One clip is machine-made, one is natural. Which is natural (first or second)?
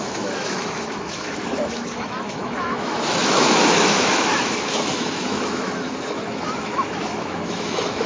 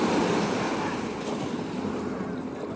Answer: second